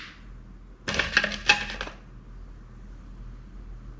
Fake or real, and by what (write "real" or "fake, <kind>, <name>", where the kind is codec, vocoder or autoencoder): real